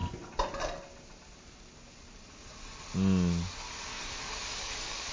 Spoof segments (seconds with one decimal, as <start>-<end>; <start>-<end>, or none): 3.9-5.1